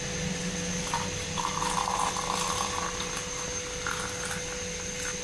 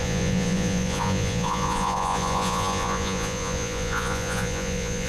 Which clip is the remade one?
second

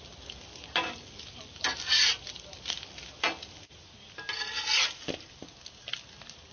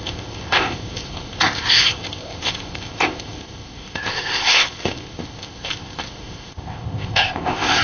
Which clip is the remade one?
second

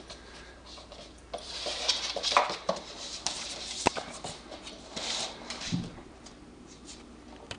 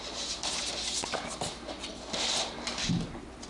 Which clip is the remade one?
first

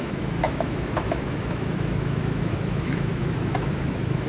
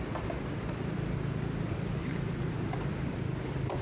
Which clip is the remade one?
first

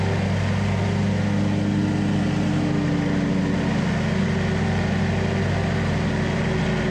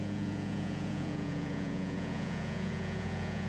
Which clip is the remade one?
second